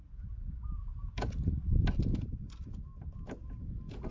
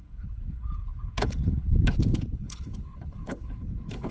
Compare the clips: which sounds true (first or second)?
first